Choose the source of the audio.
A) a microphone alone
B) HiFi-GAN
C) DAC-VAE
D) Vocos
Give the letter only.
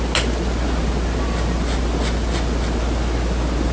A